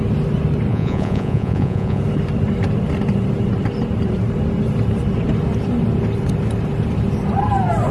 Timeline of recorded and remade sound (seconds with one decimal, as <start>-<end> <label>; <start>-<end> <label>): 0.0-0.7 recorded; 0.7-2.0 remade; 2.0-7.9 recorded